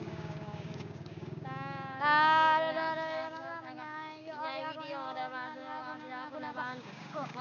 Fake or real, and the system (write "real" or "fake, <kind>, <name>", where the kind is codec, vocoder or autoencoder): fake, codec, DAC